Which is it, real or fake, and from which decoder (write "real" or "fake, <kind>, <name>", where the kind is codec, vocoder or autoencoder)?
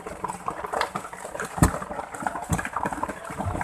fake, vocoder, BigVGAN v2